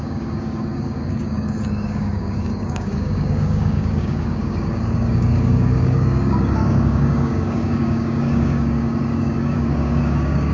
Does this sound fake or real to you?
fake